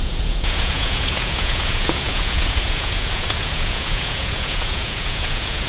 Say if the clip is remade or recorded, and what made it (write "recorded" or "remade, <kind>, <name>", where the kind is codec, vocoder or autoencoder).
remade, vocoder, Vocos